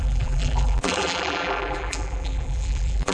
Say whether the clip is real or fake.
fake